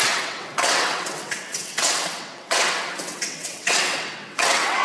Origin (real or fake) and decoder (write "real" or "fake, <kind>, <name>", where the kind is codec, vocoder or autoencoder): fake, vocoder, WaveNeXt